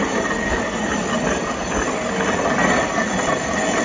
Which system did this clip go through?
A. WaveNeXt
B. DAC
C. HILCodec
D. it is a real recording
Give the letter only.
D